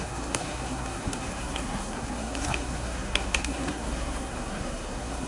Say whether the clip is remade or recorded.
remade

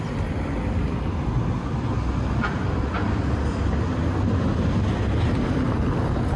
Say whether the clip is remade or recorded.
recorded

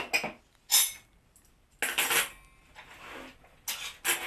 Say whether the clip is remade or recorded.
recorded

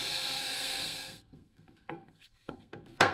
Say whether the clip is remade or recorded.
remade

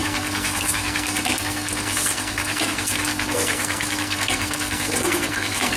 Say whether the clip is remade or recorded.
remade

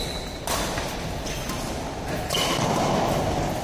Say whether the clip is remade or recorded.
recorded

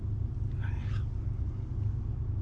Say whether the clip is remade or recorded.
recorded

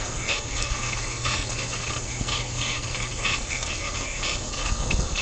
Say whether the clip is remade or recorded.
remade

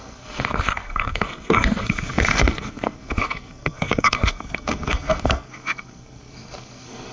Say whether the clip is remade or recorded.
remade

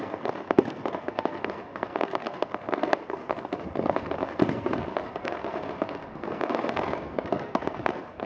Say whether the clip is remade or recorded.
remade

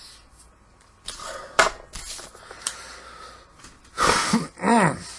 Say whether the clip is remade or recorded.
recorded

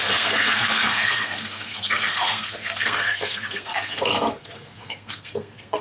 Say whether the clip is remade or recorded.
remade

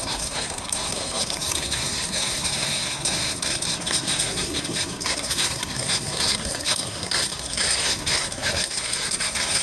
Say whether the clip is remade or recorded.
remade